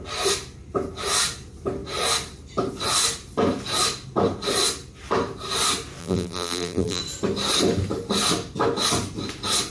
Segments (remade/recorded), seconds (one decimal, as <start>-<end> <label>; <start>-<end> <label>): 0.0-6.0 recorded; 6.0-7.0 remade; 7.0-9.7 recorded